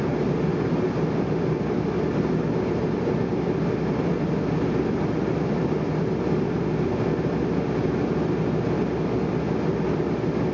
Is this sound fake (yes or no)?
no